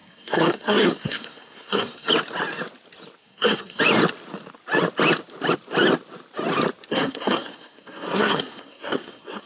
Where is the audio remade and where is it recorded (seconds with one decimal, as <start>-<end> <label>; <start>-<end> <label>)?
0.0-2.1 remade; 2.1-3.2 recorded; 3.2-3.8 remade; 3.8-6.9 recorded; 6.9-9.5 remade